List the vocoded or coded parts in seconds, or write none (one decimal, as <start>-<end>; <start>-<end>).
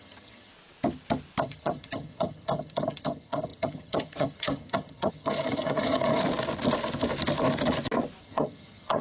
0.0-0.5; 1.4-6.2; 8.2-9.0